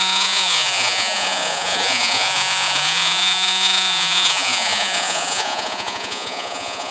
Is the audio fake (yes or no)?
yes